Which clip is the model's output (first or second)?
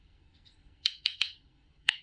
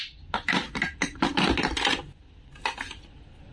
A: first